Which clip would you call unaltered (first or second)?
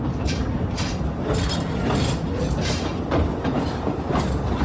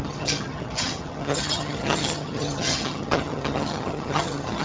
first